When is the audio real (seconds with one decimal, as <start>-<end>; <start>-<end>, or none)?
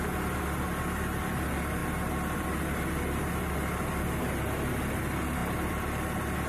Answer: 0.0-6.5